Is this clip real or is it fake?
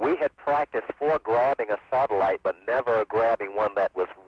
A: fake